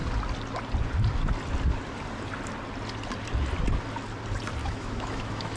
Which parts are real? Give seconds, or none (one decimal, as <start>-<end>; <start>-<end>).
0.0-4.6